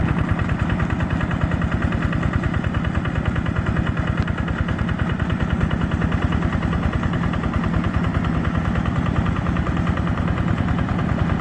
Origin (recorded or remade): recorded